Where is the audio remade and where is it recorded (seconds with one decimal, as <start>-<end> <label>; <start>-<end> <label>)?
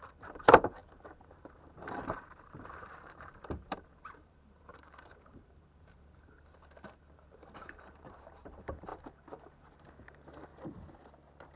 0.0-10.5 remade; 10.5-11.6 recorded